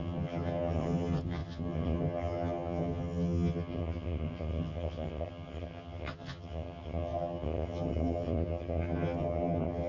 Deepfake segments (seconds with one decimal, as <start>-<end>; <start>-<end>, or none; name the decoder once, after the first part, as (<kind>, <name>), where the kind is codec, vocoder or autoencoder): 0.0-9.9 (vocoder, HiFi-GAN)